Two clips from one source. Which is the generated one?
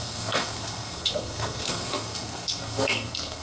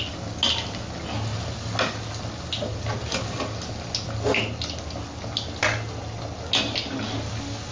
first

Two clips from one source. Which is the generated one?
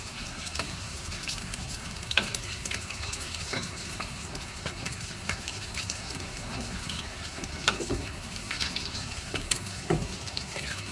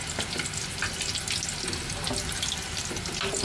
first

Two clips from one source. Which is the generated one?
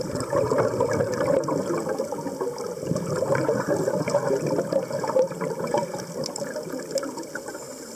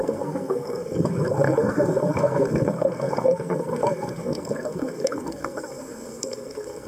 second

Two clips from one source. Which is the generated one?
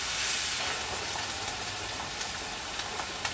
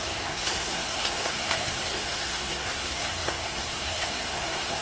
second